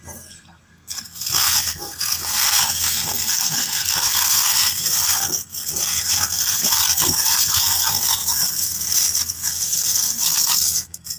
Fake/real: fake